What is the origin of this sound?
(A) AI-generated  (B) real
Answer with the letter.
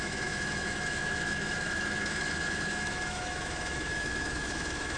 A